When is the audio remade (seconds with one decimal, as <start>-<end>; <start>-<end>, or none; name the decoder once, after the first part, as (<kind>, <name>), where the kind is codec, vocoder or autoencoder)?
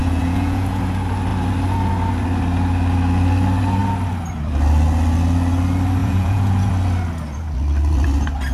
0.0-0.8 (vocoder, Vocos); 6.0-6.7